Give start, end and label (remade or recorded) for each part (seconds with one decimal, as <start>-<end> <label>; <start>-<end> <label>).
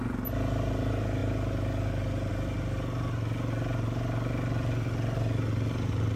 0.0-6.2 recorded